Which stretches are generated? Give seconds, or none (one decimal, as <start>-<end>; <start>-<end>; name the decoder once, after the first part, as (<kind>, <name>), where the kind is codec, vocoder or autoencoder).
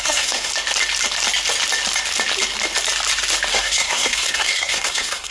0.0-0.5 (codec, SNAC); 3.5-5.3